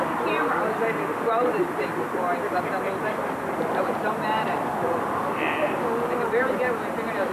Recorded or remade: recorded